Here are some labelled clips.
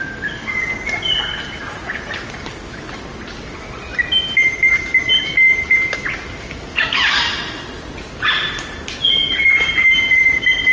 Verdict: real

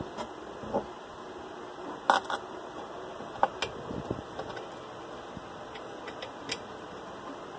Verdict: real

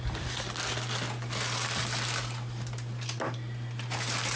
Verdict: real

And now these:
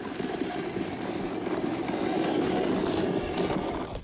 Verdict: real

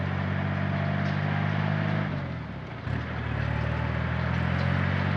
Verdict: real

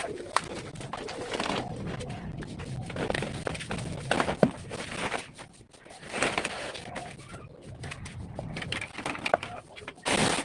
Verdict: real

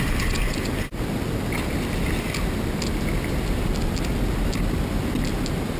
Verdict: real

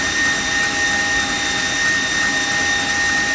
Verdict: real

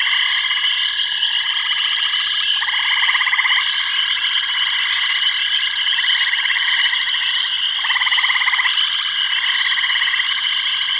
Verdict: fake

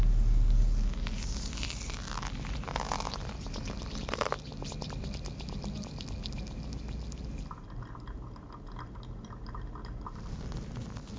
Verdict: real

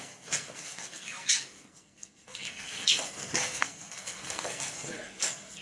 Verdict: fake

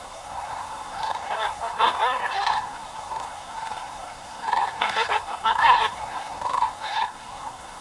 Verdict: fake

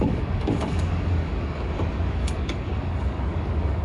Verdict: fake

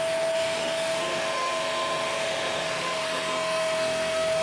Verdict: fake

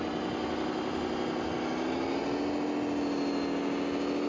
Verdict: real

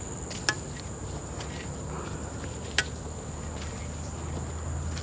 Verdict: real